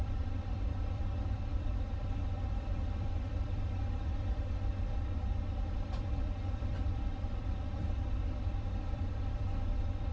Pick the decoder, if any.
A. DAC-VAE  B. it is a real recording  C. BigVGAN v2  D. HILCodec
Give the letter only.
C